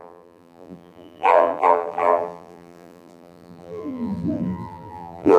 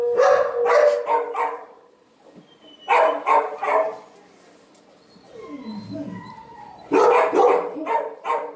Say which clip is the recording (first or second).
second